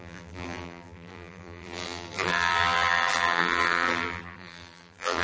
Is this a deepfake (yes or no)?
yes